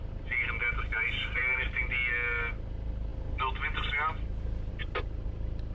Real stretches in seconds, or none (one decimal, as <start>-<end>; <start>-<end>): 0.0-5.7